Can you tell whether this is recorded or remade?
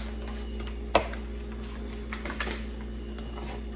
recorded